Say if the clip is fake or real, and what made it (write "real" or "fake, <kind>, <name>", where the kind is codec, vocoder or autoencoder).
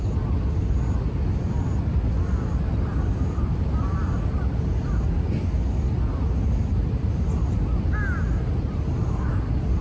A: real